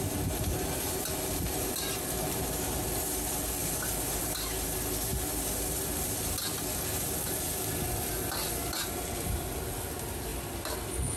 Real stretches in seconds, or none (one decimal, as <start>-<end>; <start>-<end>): 0.0-11.2